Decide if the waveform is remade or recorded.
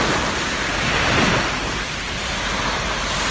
recorded